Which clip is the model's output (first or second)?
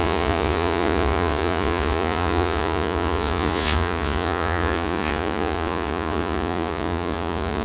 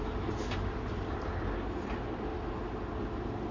first